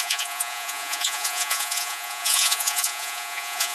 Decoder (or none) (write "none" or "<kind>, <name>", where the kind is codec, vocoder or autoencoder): vocoder, Vocos